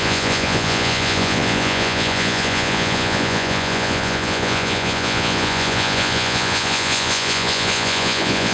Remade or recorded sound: remade